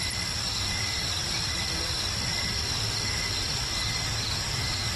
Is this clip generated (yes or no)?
no